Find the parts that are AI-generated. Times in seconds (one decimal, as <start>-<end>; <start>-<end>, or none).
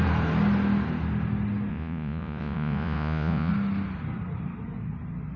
1.7-3.5